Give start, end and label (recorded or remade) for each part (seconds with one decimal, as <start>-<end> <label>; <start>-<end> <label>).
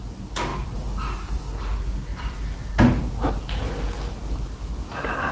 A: 0.0-2.1 recorded; 2.1-2.7 remade; 2.7-5.3 recorded